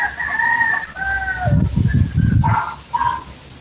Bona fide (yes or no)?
yes